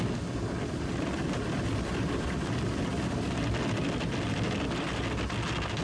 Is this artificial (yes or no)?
no